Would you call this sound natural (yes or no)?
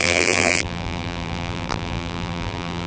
no